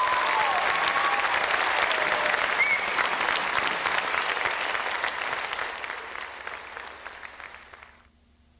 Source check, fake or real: real